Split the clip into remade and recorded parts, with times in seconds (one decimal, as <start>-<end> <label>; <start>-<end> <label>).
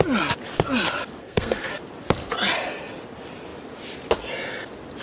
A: 0.0-1.2 recorded; 1.2-1.7 remade; 1.7-5.0 recorded